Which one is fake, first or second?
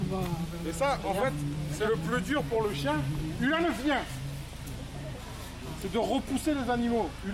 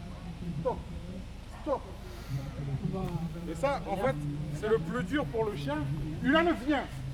second